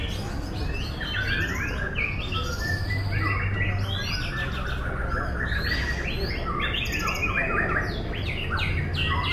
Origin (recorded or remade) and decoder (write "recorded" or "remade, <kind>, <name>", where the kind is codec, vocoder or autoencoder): recorded